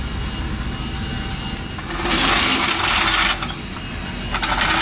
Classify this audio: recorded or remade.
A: recorded